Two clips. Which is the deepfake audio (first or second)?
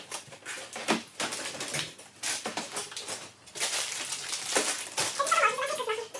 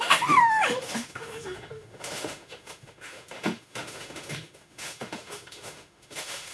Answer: second